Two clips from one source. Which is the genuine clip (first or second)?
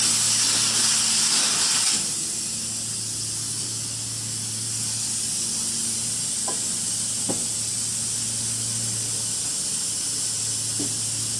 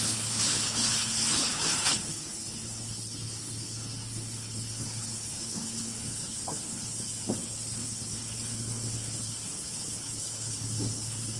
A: first